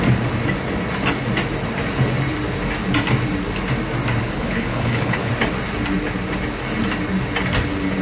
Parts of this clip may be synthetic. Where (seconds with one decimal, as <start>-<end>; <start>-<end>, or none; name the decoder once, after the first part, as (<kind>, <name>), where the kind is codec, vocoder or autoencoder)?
4.2-5.3 (codec, HILCodec)

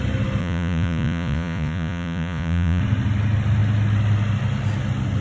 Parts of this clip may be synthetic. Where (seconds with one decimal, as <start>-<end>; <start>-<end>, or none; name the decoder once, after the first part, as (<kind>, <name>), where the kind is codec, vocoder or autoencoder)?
0.4-2.8 (vocoder, Vocos)

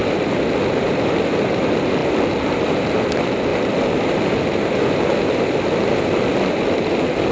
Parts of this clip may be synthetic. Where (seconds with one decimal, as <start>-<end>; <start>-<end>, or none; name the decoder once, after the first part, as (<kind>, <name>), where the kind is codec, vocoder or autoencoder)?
none

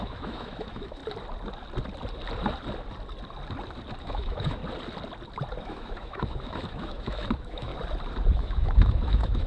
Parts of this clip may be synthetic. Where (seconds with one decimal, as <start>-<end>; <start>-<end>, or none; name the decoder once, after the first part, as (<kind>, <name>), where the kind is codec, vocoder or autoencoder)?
0.0-1.0 (autoencoder, DAC-VAE); 4.0-4.6; 5.6-7.7; 8.3-9.5

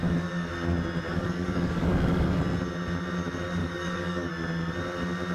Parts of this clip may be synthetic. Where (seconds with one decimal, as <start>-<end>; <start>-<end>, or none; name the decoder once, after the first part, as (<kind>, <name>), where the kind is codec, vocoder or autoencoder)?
0.0-0.5 (codec, DAC); 1.1-2.4; 3.6-4.3

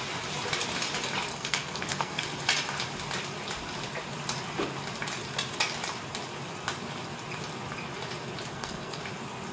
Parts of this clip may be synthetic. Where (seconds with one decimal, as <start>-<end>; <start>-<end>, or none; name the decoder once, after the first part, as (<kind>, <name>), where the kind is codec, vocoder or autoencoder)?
1.3-2.2 (codec, SNAC); 8.5-9.0